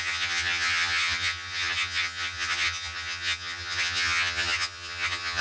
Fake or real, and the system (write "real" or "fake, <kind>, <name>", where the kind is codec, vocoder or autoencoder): fake, vocoder, HiFi-GAN